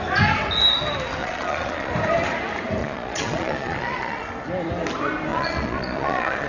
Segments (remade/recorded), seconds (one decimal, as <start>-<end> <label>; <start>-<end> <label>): 0.0-1.2 recorded; 1.2-1.9 remade; 1.9-2.8 recorded; 2.8-4.3 remade; 4.3-5.3 recorded; 5.3-6.5 remade